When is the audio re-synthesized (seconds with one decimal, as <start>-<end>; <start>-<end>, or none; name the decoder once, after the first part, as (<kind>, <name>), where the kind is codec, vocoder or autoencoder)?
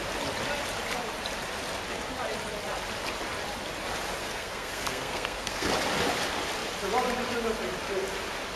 4.2-5.7 (codec, SNAC)